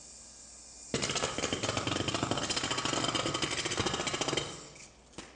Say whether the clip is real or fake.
real